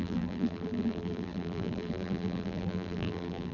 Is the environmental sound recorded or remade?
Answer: remade